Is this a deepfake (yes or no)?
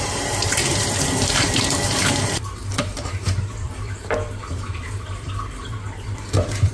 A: yes